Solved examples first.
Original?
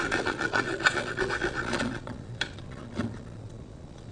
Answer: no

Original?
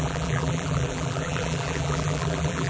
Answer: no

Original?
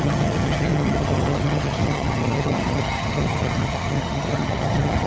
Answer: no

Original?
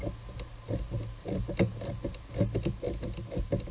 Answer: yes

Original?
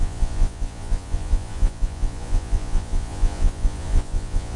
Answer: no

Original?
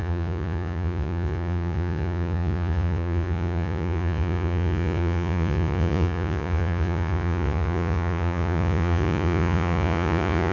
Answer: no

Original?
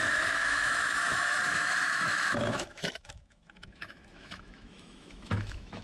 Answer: no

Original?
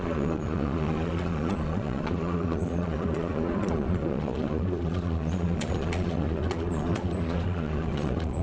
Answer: no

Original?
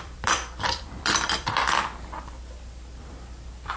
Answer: no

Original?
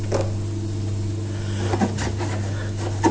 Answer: yes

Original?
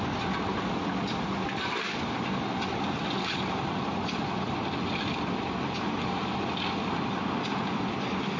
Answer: yes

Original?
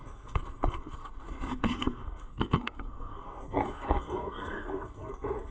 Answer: no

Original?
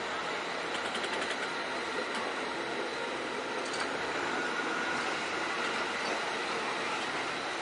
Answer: yes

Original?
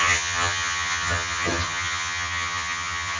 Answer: no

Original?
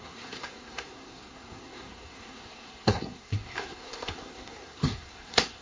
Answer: no